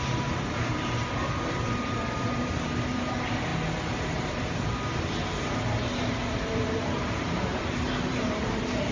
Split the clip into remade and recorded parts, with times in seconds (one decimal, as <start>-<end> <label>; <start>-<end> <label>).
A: 0.0-8.9 remade